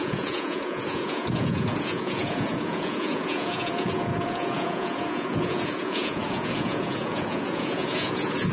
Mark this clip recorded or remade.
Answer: remade